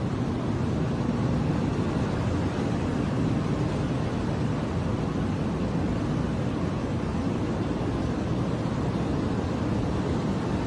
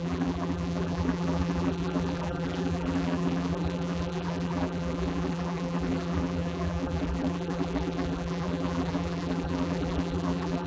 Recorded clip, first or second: first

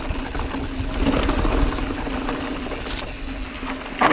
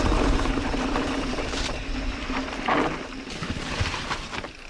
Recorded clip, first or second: first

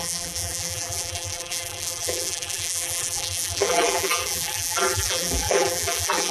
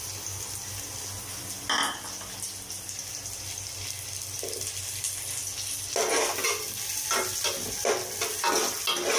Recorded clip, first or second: second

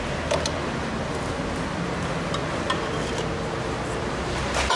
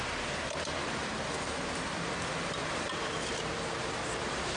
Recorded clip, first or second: first